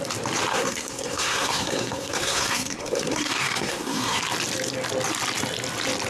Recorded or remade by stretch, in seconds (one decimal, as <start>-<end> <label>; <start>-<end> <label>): 0.0-0.5 recorded; 0.5-4.2 remade; 4.2-6.1 recorded